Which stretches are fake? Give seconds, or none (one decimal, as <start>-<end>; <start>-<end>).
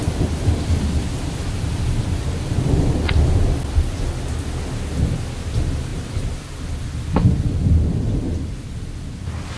5.9-6.5